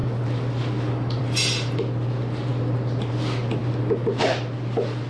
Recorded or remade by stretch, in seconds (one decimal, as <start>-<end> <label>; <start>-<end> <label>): 0.0-5.1 recorded